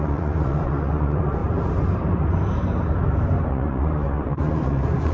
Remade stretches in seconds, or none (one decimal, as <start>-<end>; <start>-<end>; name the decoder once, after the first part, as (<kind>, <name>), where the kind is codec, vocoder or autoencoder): 0.0-1.4 (vocoder, Vocos); 3.5-5.1